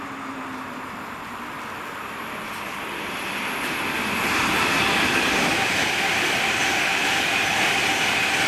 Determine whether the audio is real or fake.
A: real